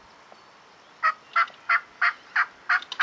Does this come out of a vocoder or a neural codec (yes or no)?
no